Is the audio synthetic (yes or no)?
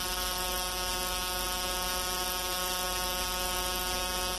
no